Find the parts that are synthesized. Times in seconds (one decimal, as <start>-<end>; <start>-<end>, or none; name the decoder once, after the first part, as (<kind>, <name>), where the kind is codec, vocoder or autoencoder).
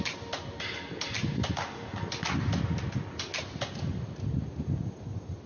none